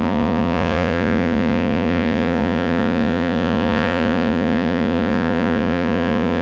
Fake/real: fake